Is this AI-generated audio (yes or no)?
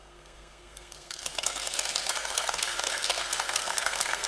yes